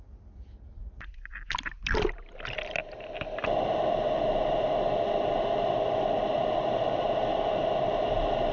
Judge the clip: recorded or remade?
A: remade